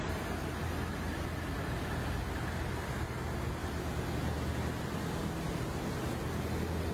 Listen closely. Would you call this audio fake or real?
real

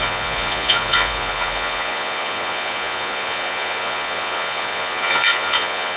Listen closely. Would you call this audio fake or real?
fake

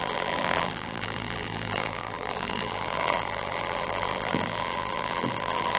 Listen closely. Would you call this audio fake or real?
fake